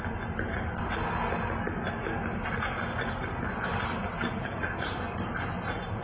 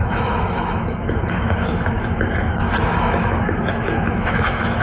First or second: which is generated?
second